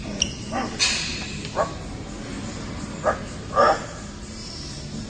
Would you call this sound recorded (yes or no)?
yes